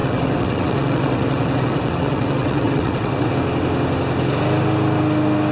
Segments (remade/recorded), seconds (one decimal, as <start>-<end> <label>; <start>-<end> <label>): 0.0-3.3 remade; 3.3-5.5 recorded